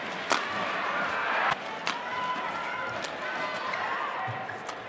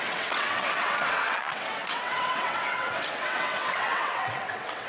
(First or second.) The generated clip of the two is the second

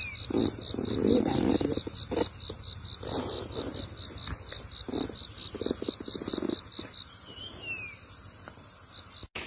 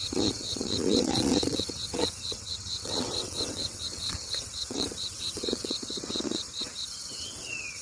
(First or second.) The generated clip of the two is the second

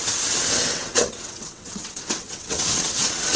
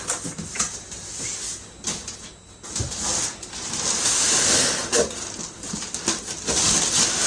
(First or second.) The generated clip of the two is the first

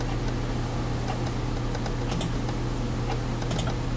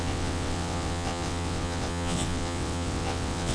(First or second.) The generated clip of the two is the second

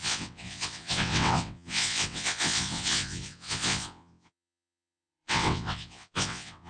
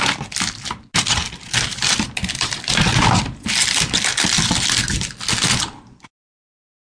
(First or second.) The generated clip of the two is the first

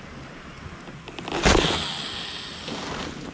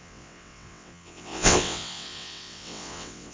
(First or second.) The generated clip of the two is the second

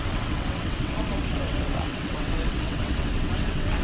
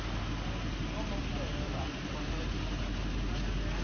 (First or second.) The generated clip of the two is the first